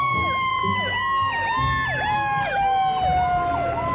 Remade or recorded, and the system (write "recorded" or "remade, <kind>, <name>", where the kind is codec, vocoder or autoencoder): recorded